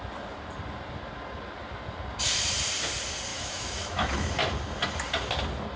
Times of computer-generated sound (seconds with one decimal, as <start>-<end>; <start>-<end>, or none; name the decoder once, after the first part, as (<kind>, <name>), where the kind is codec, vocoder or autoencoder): 3.3-4.3 (autoencoder, DAC-VAE)